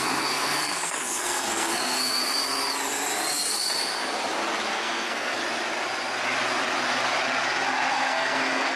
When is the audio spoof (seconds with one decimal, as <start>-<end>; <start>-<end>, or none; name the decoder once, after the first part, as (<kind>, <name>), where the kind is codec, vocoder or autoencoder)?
0.0-2.2 (codec, SNAC); 4.7-5.4; 7.9-8.8